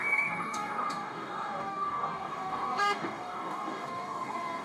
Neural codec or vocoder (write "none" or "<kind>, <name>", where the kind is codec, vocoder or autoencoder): codec, DAC